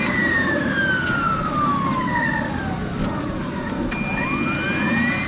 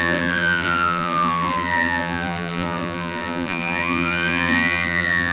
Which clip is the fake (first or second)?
second